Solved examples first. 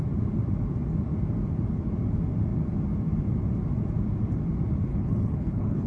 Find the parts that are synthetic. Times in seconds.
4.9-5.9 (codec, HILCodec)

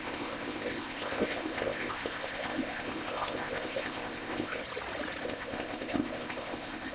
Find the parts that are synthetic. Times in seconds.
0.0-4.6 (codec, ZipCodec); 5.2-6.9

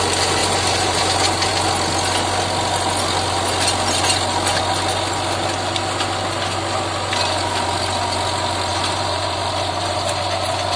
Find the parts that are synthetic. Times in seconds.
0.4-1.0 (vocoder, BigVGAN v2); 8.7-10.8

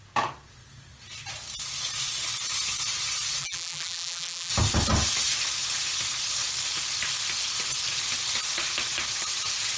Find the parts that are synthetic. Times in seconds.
3.4-4.5 (vocoder, BigVGAN v2)